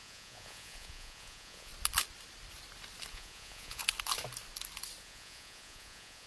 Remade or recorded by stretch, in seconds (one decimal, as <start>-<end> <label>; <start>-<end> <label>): 0.0-1.7 remade; 1.7-3.1 recorded; 3.1-3.8 remade; 3.8-5.0 recorded; 5.0-6.3 remade